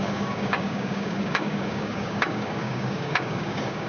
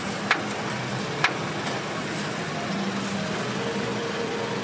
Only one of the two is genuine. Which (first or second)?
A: second